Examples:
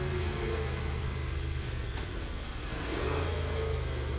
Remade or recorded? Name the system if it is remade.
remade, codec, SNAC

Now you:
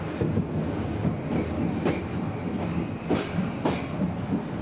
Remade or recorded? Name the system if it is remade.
recorded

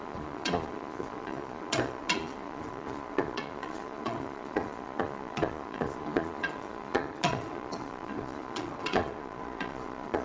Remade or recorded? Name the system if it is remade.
remade, vocoder, Vocos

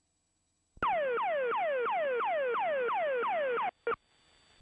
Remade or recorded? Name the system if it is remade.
recorded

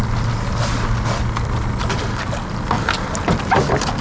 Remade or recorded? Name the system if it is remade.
recorded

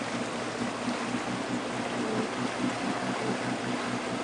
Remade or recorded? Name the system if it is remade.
recorded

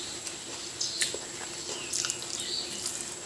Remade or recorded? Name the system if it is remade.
recorded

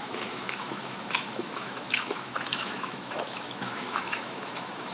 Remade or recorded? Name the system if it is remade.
remade, autoencoder, DAC-VAE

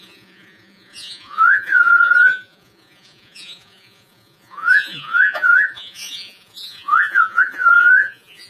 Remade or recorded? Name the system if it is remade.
remade, vocoder, Vocos